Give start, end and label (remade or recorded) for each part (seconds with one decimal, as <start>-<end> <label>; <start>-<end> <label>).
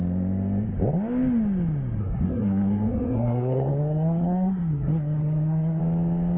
0.0-2.0 recorded; 2.0-5.8 remade; 5.8-6.4 recorded